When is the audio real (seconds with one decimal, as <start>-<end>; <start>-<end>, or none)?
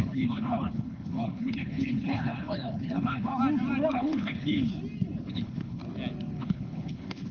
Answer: 3.3-3.9; 4.7-5.3; 5.8-6.4